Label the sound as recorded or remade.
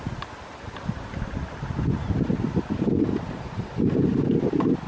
recorded